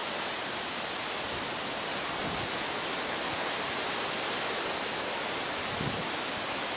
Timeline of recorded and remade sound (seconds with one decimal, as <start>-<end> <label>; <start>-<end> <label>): 0.0-6.8 recorded